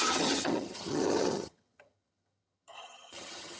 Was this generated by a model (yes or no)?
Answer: yes